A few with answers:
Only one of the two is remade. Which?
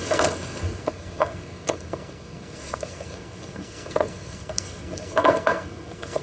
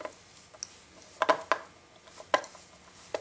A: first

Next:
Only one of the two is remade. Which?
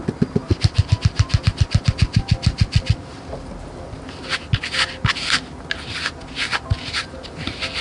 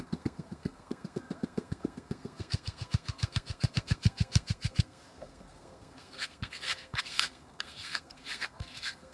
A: second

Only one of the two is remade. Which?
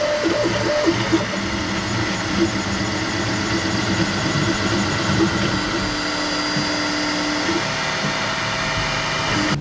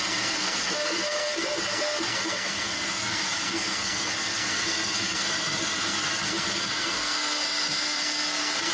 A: second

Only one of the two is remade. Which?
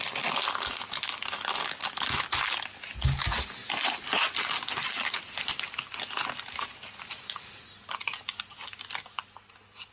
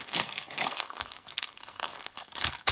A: second